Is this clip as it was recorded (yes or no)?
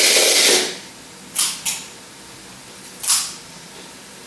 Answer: yes